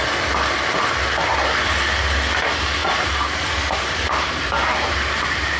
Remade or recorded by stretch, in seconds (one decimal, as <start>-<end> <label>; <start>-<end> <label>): 0.0-2.8 recorded; 2.8-5.6 remade